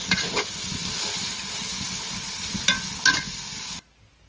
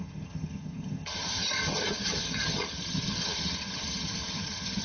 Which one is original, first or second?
first